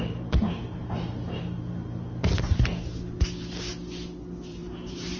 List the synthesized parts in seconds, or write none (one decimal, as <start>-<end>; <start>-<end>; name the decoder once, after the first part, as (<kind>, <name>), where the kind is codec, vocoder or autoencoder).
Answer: 0.8-1.4 (vocoder, BigVGAN v2); 4.5-5.2